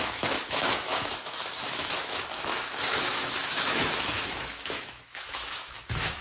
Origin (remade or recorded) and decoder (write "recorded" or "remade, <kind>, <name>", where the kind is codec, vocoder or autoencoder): remade, autoencoder, DAC-VAE